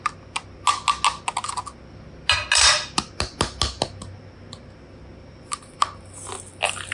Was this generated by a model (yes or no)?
no